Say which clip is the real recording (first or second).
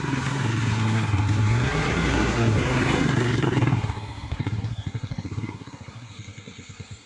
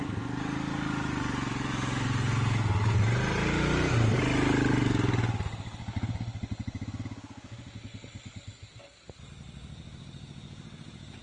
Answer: second